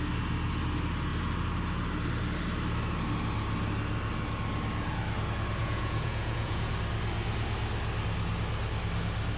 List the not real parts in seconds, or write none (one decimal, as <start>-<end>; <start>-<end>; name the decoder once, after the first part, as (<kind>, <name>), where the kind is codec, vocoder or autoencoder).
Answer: 5.6-6.7 (vocoder, Vocos)